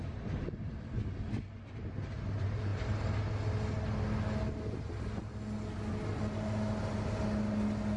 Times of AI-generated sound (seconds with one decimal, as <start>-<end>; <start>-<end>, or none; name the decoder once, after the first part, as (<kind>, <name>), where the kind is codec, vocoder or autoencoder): none